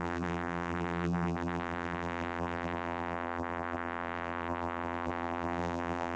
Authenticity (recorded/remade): remade